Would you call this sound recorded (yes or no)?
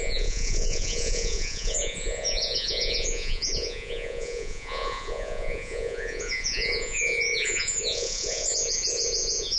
no